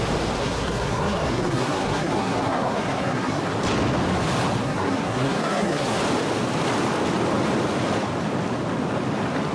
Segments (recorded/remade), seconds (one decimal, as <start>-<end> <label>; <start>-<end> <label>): 0.0-0.4 recorded; 0.4-3.4 remade; 3.4-4.6 recorded; 4.6-6.0 remade; 6.0-9.5 recorded